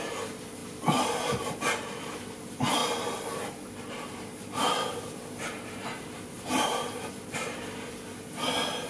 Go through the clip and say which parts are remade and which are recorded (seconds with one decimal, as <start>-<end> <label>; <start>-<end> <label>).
0.0-2.8 remade; 2.8-4.1 recorded; 4.1-8.9 remade